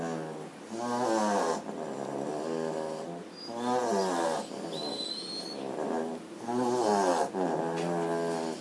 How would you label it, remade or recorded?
recorded